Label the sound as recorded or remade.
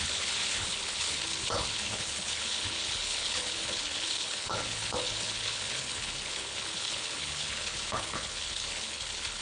remade